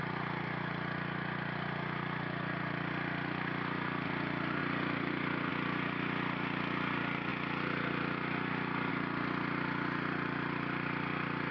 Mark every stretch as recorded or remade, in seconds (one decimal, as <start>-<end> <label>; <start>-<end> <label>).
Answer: 0.0-4.6 recorded; 4.6-5.5 remade; 5.5-11.5 recorded